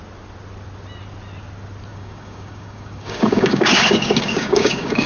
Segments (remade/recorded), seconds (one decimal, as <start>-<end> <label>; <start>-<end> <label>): 0.0-1.9 recorded; 1.9-5.1 remade